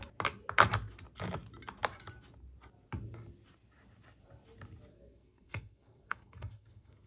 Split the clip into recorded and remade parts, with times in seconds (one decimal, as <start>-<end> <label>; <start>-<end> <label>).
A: 0.0-4.9 recorded; 4.9-7.1 remade